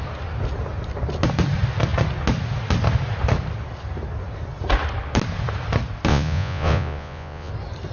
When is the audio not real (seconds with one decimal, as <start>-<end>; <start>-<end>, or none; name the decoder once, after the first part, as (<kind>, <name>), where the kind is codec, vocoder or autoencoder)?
6.1-7.5 (vocoder, Vocos)